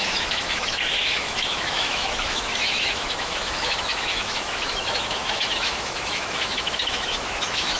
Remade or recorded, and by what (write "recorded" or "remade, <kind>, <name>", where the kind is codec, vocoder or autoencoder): remade, autoencoder, DAC-VAE